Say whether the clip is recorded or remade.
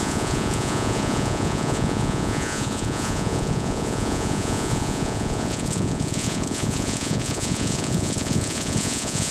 remade